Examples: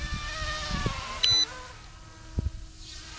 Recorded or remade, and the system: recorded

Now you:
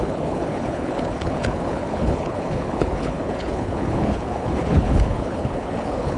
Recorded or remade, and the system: remade, codec, HILCodec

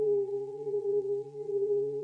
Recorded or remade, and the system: remade, vocoder, Vocos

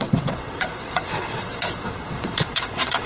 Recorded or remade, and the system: remade, vocoder, WaveNeXt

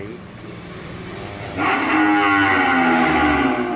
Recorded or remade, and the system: recorded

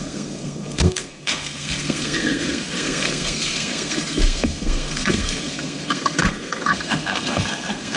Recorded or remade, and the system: remade, codec, SNAC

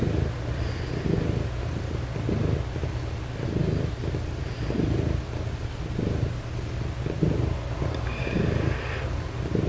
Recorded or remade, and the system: recorded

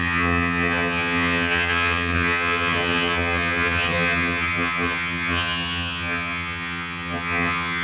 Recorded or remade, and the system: remade, vocoder, HiFi-GAN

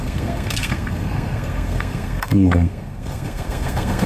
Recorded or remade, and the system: remade, codec, SNAC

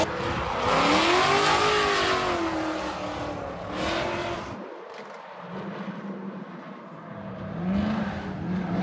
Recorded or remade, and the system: recorded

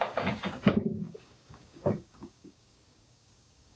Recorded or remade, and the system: remade, codec, DAC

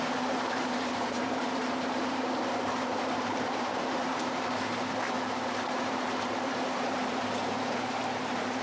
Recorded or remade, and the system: remade, vocoder, BigVGAN v2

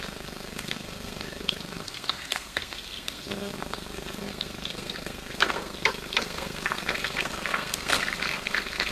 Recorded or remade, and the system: remade, codec, SNAC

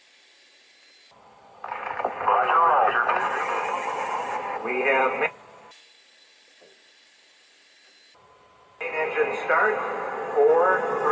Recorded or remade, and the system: recorded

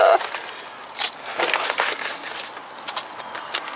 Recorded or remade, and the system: recorded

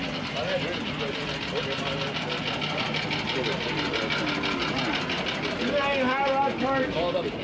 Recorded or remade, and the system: recorded